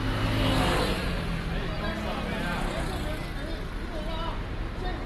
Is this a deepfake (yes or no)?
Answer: no